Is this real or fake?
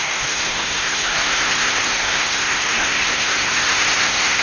fake